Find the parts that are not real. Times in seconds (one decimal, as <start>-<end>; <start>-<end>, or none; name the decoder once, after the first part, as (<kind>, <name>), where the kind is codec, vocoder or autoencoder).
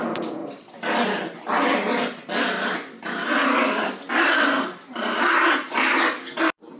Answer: 0.0-0.4 (vocoder, BigVGAN v2); 2.5-6.8